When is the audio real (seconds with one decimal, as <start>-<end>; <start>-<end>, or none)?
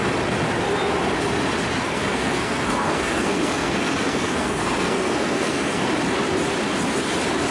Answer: 0.0-1.8; 5.9-7.5